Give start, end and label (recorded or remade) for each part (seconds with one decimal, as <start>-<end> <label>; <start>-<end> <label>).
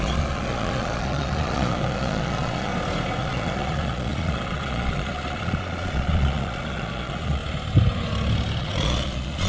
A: 0.0-2.7 remade; 2.7-3.2 recorded; 3.2-7.4 remade; 7.4-8.6 recorded; 8.6-9.5 remade